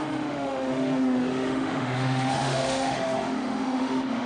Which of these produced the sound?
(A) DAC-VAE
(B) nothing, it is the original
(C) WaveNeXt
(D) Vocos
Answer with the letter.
A